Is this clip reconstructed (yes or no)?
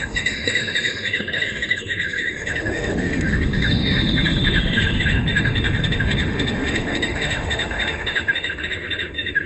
yes